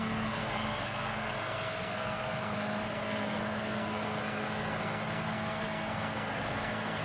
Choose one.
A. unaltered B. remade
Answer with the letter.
B